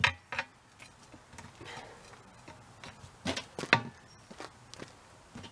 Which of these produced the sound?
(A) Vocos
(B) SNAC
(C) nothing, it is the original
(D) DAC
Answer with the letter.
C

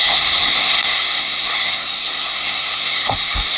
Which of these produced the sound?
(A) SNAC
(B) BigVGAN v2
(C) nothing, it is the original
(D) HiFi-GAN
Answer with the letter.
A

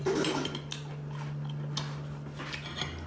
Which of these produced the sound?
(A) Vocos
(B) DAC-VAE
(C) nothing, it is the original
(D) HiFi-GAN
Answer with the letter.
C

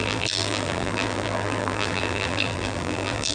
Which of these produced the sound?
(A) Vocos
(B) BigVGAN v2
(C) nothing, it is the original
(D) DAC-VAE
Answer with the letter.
B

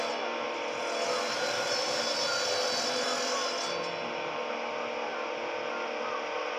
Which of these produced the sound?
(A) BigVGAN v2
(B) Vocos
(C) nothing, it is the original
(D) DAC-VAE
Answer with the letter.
C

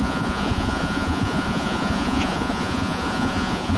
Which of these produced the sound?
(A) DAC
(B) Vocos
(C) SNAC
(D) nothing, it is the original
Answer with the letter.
B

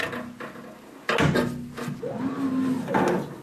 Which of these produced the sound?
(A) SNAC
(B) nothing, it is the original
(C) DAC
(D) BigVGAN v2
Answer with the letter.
B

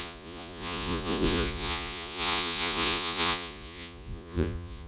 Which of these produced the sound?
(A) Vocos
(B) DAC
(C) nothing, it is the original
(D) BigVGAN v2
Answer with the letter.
A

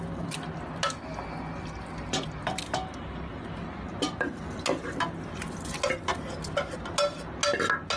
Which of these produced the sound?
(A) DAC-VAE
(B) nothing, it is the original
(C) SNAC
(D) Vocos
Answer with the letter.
B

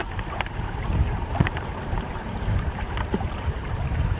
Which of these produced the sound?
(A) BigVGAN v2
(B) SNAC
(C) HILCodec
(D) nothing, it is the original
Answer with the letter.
A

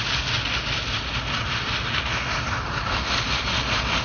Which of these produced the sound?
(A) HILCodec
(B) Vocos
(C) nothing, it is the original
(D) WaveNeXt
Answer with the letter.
C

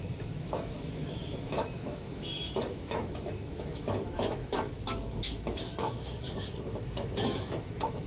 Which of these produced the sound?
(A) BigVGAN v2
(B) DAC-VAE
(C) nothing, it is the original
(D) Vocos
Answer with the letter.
B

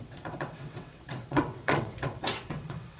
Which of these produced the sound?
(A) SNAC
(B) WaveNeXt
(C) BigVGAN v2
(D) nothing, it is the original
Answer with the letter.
B